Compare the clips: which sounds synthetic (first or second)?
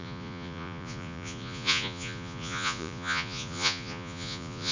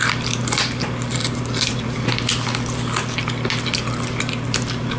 first